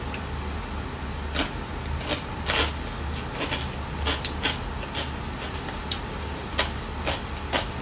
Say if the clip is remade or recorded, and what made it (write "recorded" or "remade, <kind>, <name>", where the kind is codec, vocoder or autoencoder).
recorded